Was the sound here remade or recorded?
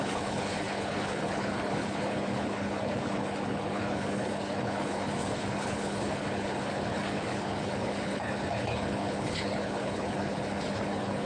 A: remade